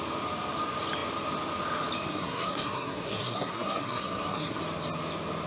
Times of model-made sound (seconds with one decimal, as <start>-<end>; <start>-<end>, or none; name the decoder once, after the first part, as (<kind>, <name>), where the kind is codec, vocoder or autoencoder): 2.1-4.6 (codec, SNAC)